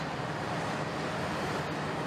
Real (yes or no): yes